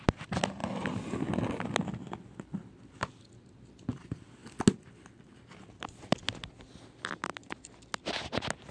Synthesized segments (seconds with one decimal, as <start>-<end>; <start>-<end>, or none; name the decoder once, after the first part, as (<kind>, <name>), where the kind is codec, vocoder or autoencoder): none